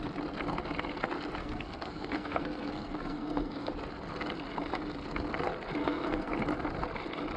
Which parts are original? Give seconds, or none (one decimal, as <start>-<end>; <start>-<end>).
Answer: 0.0-1.4; 3.7-5.8; 6.3-7.4